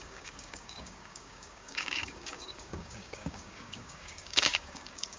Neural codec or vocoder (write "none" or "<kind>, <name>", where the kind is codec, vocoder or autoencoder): codec, DAC